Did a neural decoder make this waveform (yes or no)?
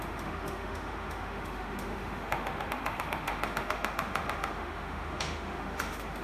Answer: yes